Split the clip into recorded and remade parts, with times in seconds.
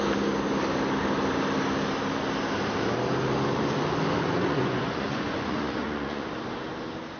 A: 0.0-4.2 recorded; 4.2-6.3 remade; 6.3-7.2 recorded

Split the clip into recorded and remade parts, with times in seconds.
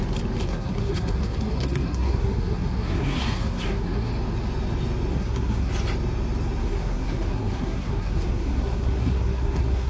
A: 0.0-0.4 recorded; 0.4-4.1 remade; 4.1-5.1 recorded; 5.1-5.7 remade; 5.7-6.6 recorded; 6.6-9.9 remade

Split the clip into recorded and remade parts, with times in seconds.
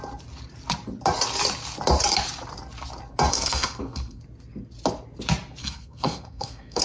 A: 0.0-3.3 recorded; 3.3-4.2 remade; 4.2-5.6 recorded; 5.6-6.8 remade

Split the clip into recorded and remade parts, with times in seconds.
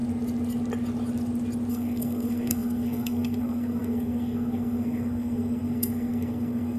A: 0.0-1.7 recorded; 1.7-6.8 remade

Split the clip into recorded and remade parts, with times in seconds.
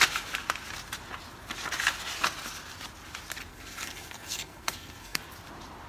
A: 0.0-3.5 recorded; 3.5-5.2 remade; 5.2-5.9 recorded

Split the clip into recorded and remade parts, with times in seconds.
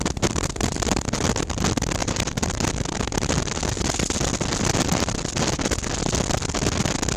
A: 0.0-2.0 recorded; 2.0-2.7 remade; 2.7-7.2 recorded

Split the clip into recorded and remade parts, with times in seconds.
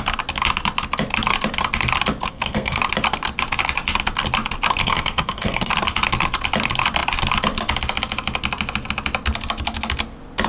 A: 0.0-2.3 recorded; 2.3-2.8 remade; 2.8-4.8 recorded; 4.8-5.7 remade; 5.7-10.5 recorded